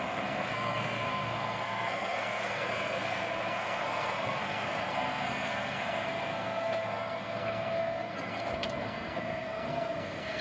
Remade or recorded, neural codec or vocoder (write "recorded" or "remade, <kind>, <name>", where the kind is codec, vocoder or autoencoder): remade, codec, SNAC